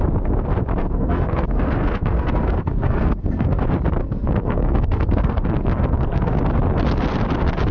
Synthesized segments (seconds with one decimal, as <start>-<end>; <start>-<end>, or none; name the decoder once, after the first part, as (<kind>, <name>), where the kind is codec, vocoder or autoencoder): 0.8-3.6 (codec, SNAC); 4.0-6.4